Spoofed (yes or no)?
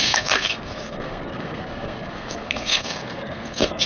yes